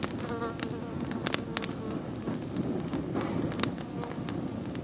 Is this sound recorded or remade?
recorded